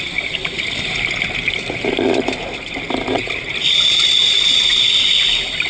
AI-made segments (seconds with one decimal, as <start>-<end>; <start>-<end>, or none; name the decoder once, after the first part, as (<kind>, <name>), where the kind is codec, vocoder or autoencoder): none